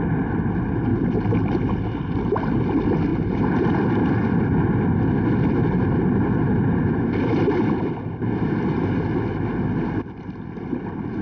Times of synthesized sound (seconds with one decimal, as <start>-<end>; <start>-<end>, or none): none